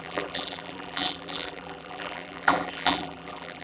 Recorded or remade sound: remade